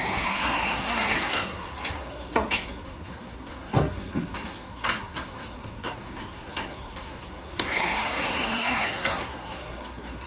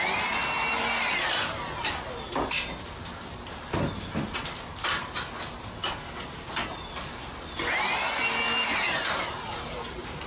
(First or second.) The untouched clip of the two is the second